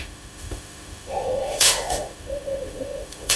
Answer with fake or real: fake